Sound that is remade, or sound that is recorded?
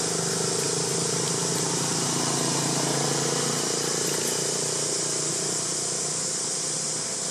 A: recorded